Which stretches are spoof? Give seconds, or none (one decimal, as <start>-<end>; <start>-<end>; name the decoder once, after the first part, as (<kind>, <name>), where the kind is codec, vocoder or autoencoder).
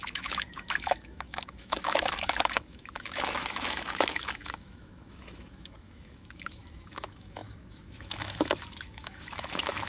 0.0-9.9 (autoencoder, DAC-VAE)